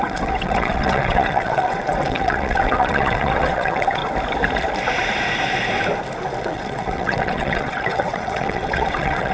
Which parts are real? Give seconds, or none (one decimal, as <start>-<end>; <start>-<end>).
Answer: 4.0-6.4